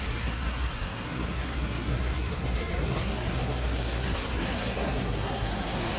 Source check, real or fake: fake